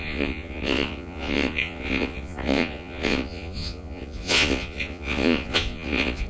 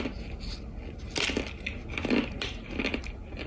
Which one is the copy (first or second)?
first